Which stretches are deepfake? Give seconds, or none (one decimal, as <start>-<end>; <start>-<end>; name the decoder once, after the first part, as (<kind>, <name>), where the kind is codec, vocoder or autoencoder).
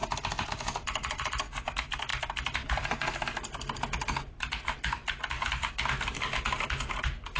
none